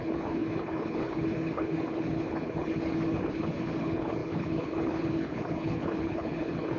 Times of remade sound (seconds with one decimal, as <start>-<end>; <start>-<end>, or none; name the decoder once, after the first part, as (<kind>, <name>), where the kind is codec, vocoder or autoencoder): 0.0-6.8 (codec, HILCodec)